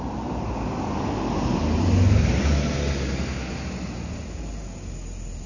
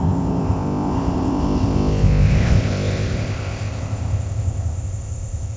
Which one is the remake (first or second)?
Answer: second